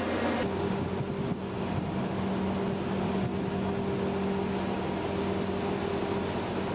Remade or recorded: recorded